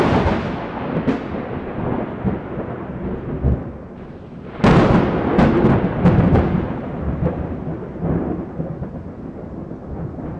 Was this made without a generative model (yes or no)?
yes